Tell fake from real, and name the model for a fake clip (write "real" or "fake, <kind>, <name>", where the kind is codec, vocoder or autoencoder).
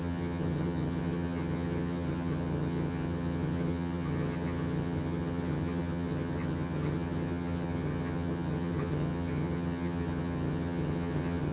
fake, vocoder, HiFi-GAN